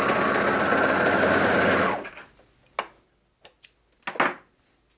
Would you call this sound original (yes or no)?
yes